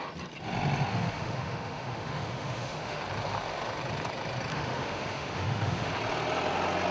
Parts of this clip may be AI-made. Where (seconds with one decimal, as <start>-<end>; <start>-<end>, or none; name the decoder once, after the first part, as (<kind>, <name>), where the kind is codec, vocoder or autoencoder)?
0.9-3.0 (autoencoder, DAC-VAE); 4.5-5.9